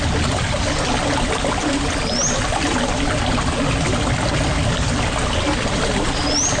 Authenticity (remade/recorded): recorded